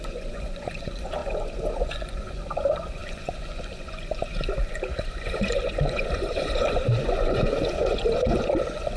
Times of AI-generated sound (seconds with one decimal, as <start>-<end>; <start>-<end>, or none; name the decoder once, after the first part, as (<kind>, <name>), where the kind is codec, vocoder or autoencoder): 0.0-9.0 (vocoder, Vocos)